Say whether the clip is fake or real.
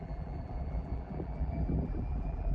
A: fake